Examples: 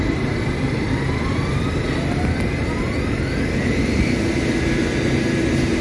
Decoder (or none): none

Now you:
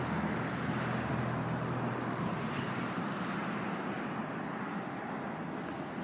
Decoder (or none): none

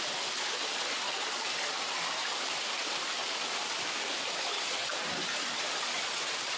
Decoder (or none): vocoder, BigVGAN v2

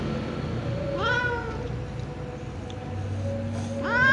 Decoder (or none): none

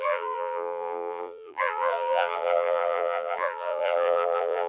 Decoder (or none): vocoder, BigVGAN v2